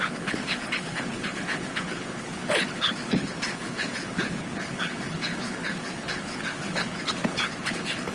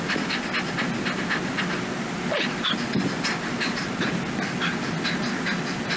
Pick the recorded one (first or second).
second